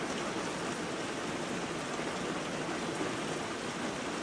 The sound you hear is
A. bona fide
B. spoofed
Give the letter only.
A